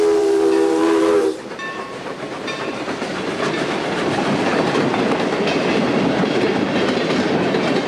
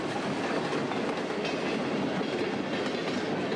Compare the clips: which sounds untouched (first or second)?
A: second